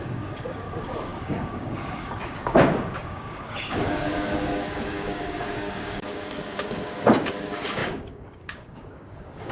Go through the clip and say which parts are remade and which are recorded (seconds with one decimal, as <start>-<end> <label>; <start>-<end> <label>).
0.0-9.5 remade